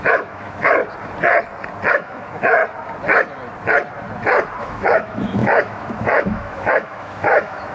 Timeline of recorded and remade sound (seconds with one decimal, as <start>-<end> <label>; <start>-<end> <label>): 0.0-0.8 remade; 0.8-1.9 recorded; 1.9-2.6 remade; 2.6-4.6 recorded; 4.6-7.7 remade